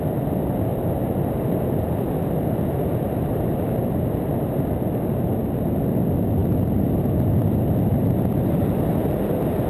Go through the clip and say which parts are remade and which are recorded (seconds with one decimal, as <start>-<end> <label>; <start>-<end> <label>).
0.0-6.4 recorded; 6.4-7.5 remade; 7.5-7.9 recorded; 7.9-8.9 remade; 8.9-9.7 recorded